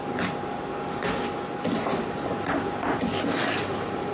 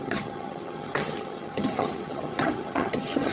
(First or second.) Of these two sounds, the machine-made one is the second